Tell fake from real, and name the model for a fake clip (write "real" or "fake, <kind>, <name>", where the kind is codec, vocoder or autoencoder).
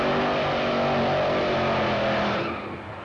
real